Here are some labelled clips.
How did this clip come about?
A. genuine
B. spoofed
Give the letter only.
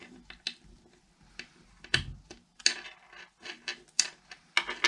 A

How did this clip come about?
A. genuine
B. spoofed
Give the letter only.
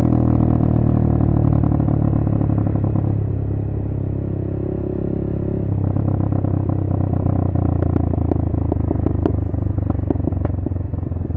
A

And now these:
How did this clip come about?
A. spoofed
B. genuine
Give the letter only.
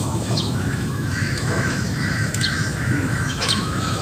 A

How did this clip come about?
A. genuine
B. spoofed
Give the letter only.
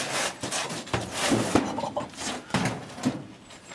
A